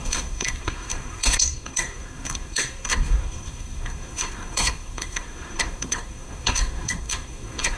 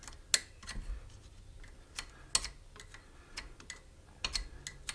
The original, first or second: second